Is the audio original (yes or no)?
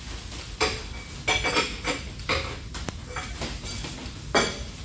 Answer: yes